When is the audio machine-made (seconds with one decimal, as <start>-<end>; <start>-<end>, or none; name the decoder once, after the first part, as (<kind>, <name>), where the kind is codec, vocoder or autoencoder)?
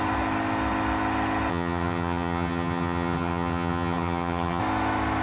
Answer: 1.5-4.6 (vocoder, HiFi-GAN)